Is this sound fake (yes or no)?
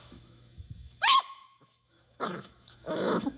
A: yes